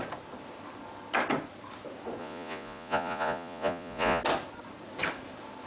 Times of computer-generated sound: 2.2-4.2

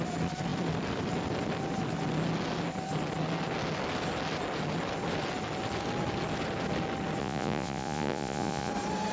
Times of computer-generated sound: 7.2-8.7

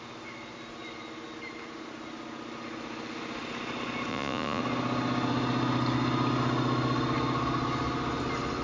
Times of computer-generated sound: 4.1-4.6

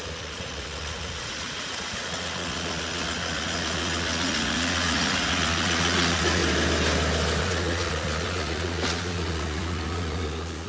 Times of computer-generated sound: 0.0-6.4; 7.4-10.7

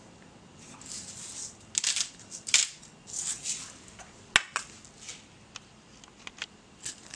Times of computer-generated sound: none